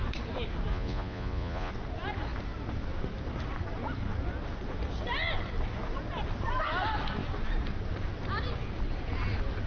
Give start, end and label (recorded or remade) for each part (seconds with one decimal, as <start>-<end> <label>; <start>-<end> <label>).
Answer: 0.0-0.7 recorded; 0.7-1.7 remade; 1.7-9.7 recorded

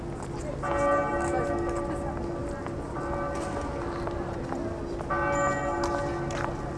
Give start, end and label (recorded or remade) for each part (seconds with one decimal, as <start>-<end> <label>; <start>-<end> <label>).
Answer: 0.0-6.8 recorded

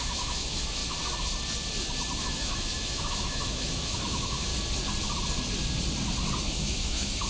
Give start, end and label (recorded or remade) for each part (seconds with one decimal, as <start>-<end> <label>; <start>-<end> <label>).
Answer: 0.0-0.8 remade; 0.8-2.2 recorded; 2.2-4.5 remade; 4.5-6.4 recorded; 6.4-7.3 remade

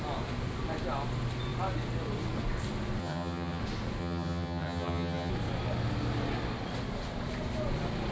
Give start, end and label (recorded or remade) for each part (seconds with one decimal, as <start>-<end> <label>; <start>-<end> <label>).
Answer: 0.0-3.0 recorded; 3.0-3.6 remade; 3.6-4.0 recorded; 4.0-5.3 remade; 5.3-8.1 recorded